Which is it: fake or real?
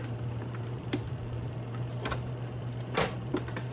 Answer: fake